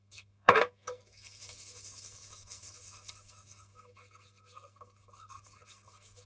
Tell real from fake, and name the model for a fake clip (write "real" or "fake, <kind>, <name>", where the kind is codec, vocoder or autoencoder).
fake, codec, SNAC